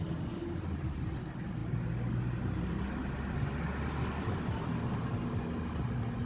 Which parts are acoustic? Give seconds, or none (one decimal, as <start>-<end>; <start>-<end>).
0.0-6.3